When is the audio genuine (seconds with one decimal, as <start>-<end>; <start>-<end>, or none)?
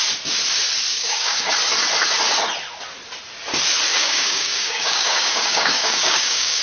0.0-0.9; 1.5-3.9